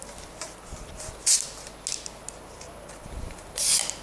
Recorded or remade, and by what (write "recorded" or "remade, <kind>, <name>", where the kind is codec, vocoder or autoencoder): recorded